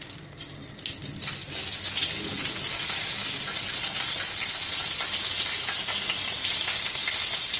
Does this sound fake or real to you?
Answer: real